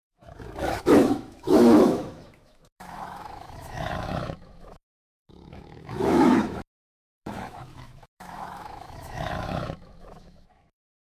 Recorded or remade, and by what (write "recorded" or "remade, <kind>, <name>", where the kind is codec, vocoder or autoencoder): remade, autoencoder, DAC-VAE